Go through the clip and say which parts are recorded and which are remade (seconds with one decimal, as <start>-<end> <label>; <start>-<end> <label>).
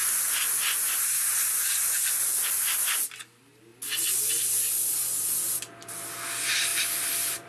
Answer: 0.0-1.6 recorded; 1.6-2.5 remade; 2.5-6.7 recorded; 6.7-7.5 remade